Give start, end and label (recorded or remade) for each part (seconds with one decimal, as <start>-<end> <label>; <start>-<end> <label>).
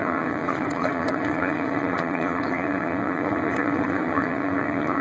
0.0-5.0 remade